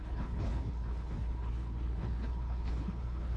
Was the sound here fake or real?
fake